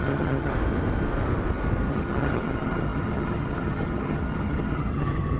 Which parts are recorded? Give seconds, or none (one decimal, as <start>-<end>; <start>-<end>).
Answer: 0.5-1.9